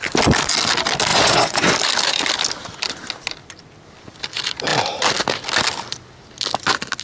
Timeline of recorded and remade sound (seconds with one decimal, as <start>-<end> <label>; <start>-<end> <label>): 0.0-1.1 recorded; 1.1-1.7 remade; 1.7-7.0 recorded